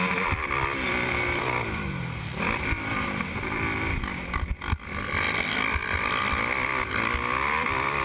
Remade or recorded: recorded